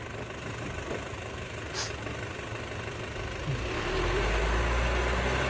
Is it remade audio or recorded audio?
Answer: recorded